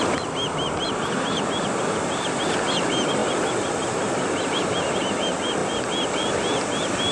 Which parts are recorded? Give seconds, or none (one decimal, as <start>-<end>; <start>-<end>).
0.0-0.4; 2.2-3.2; 4.5-7.1